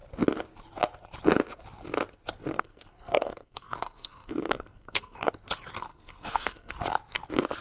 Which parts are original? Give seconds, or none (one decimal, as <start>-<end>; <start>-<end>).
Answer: 0.0-2.5; 5.3-5.9; 6.7-7.6